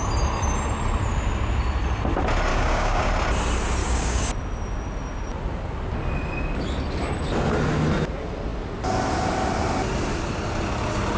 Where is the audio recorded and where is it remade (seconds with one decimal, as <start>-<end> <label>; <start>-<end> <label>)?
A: 0.0-2.5 recorded; 2.5-3.1 remade; 3.1-3.8 recorded; 3.8-4.3 remade; 4.3-11.2 recorded